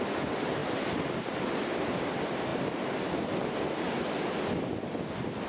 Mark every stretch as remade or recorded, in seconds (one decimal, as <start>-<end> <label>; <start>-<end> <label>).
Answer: 0.0-5.5 recorded